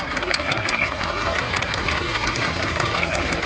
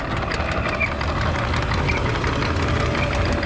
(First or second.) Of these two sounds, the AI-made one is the first